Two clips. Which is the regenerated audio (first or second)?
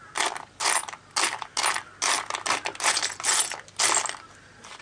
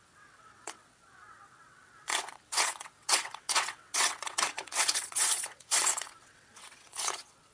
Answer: second